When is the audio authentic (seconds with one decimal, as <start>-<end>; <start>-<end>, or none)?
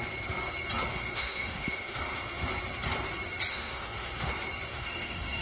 0.0-0.9; 2.4-3.5; 4.3-4.7